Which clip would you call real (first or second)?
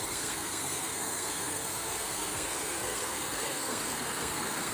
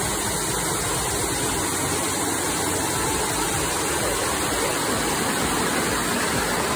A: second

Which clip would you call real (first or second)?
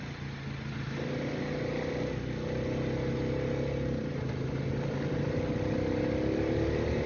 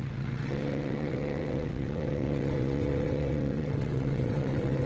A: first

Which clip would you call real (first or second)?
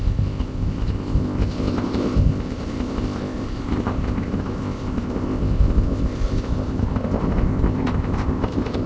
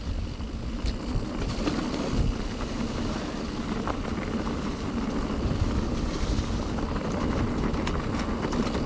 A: second